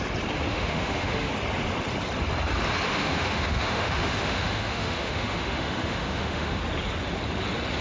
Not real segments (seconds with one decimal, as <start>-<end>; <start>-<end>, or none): 0.5-1.3; 2.9-6.6

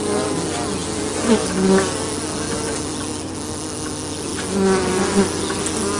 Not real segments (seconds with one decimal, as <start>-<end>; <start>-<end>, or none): none

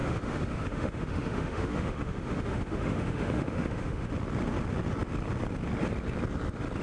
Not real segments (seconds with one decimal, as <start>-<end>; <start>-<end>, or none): 0.0-4.1

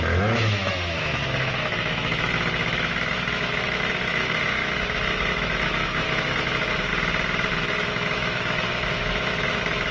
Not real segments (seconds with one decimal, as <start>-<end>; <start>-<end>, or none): 0.0-6.9; 7.5-9.9